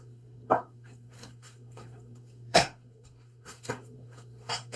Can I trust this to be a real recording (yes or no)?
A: no